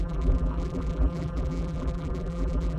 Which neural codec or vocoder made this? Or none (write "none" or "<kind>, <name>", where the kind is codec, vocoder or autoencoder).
vocoder, BigVGAN v2